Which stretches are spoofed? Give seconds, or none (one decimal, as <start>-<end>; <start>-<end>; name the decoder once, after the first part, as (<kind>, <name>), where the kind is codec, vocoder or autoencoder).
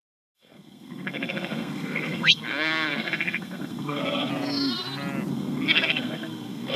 0.0-4.3 (codec, SNAC); 5.3-6.8